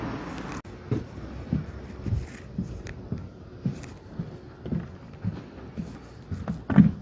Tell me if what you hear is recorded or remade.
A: recorded